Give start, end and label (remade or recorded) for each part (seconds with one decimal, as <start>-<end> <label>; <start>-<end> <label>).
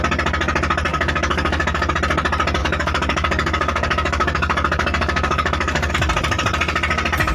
0.0-0.9 recorded; 0.9-1.9 remade; 1.9-2.6 recorded; 2.6-5.9 remade; 5.9-7.3 recorded